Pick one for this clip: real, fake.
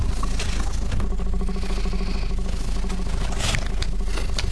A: real